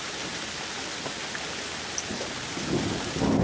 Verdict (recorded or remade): recorded